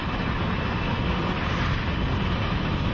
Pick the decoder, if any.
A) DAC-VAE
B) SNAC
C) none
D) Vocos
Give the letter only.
C